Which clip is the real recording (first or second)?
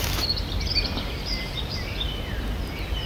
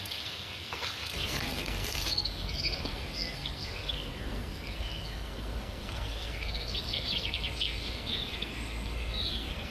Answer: first